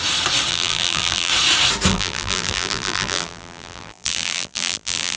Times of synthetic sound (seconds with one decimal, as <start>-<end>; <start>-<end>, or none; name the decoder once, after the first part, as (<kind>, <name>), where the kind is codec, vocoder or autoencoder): 0.5-1.3 (vocoder, BigVGAN v2); 1.9-5.2